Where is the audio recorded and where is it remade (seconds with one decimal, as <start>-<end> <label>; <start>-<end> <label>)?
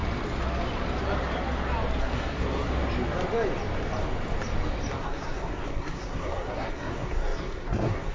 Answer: 0.0-2.0 recorded; 2.0-2.7 remade; 2.7-5.0 recorded; 5.0-8.1 remade